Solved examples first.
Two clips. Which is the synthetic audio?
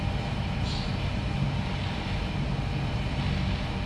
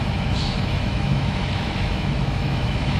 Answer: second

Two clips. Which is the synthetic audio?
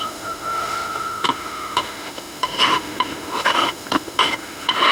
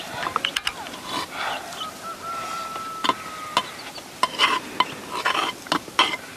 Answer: first